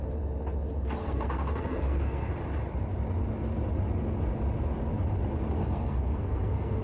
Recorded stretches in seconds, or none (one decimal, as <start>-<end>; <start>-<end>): 0.0-1.0; 2.3-5.6